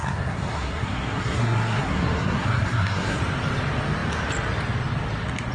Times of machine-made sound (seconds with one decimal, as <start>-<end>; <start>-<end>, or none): 0.0-3.2

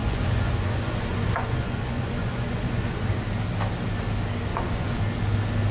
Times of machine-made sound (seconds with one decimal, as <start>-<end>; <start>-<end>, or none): 0.0-3.2; 4.5-5.0

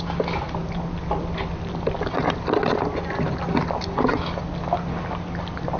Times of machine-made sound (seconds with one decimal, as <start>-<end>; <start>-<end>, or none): none

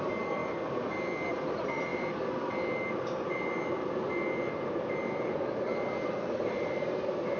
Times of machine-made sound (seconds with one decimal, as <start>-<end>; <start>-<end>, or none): none

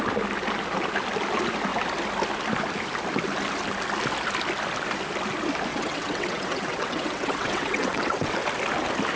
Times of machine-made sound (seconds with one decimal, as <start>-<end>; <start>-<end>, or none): 5.7-8.3

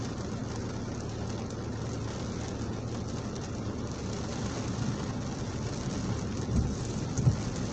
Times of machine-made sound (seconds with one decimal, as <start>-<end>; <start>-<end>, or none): none

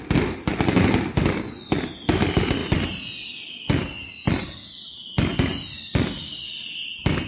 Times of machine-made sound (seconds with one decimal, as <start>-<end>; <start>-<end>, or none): none